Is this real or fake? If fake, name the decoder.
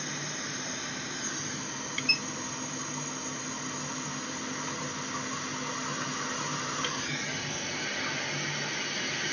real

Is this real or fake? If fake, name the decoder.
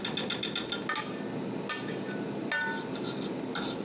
real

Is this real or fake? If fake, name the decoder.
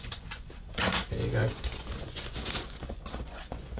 fake, vocoder, Vocos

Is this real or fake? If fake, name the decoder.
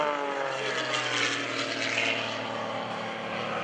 real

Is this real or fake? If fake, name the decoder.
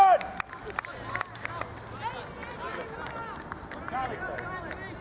real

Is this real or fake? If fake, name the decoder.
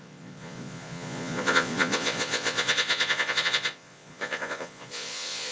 fake, vocoder, Vocos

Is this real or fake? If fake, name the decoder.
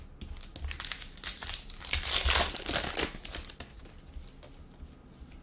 real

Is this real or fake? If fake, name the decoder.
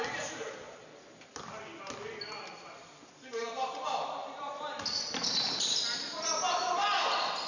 real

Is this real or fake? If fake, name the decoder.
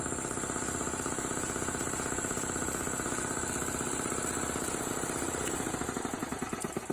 real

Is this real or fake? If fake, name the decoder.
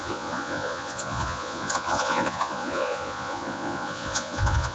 fake, vocoder, Vocos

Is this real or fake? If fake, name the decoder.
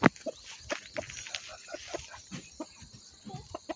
real